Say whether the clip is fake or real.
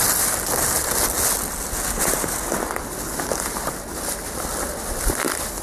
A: real